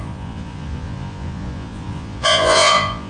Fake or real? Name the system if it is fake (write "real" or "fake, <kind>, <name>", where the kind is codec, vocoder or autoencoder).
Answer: fake, vocoder, Vocos